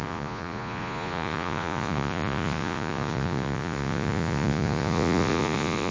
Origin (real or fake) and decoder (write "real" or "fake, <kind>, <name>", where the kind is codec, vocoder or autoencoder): fake, vocoder, Vocos